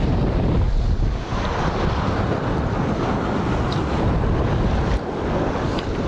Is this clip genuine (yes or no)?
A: yes